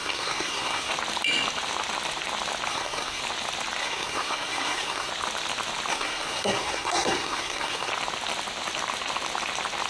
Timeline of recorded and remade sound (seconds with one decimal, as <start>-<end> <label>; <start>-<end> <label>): 0.0-0.9 remade; 0.9-2.7 recorded; 2.7-3.2 remade; 3.2-3.8 recorded; 3.8-5.1 remade; 5.1-5.9 recorded; 5.9-7.9 remade; 7.9-9.9 recorded